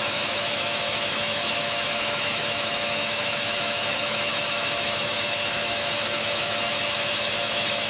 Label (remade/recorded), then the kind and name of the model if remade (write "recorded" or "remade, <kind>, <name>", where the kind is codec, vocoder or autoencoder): remade, autoencoder, DAC-VAE